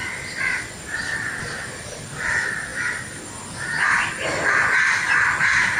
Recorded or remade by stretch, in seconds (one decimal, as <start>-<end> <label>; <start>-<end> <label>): 0.0-1.4 recorded; 1.4-2.7 remade; 2.7-4.9 recorded; 4.9-5.8 remade